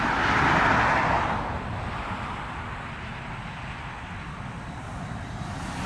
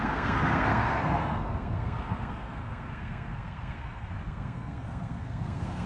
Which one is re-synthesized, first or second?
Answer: second